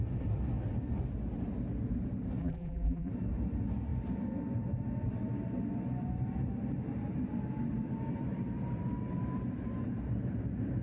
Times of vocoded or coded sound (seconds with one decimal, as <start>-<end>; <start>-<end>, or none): 2.4-3.1